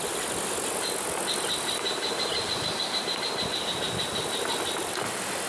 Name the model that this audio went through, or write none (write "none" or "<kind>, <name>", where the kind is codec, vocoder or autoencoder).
none